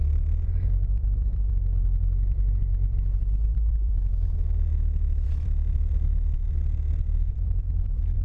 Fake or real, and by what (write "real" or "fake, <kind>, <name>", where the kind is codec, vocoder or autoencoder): fake, vocoder, BigVGAN v2